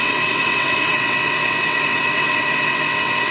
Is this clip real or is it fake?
fake